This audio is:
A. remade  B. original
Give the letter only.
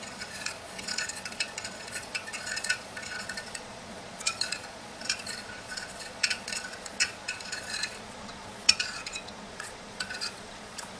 A